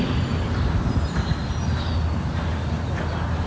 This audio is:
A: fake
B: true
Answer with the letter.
B